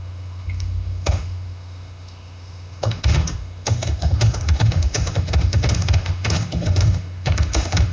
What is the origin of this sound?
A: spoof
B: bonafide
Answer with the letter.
A